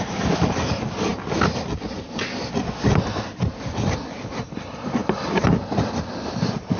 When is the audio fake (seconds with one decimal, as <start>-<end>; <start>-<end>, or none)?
none